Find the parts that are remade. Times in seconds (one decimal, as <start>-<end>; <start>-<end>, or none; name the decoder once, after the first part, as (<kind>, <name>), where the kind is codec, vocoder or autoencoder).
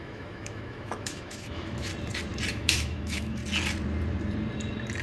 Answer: 0.0-1.9 (autoencoder, DAC-VAE); 2.5-3.4